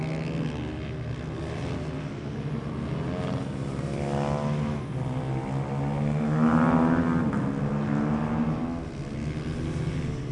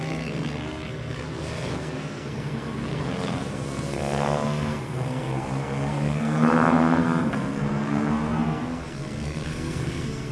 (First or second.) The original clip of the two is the first